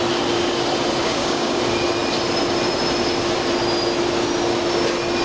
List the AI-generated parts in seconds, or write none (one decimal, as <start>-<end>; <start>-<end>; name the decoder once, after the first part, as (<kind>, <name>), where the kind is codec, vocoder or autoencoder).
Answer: 1.0-1.6 (codec, DAC)